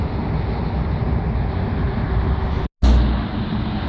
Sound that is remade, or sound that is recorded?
recorded